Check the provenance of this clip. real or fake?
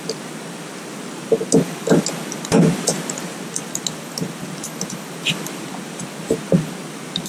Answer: real